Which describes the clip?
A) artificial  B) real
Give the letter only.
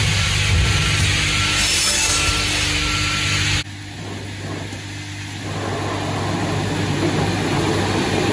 B